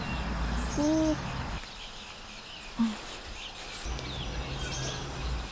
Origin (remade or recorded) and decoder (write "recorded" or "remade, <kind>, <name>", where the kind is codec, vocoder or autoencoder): recorded